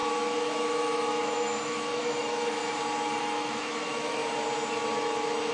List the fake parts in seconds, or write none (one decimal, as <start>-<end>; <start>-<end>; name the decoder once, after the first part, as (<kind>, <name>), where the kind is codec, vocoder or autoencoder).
0.0-2.6 (autoencoder, DAC-VAE); 3.2-4.2; 5.0-5.5